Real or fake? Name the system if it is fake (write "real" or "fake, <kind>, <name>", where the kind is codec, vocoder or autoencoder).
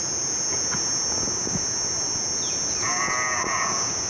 fake, vocoder, Vocos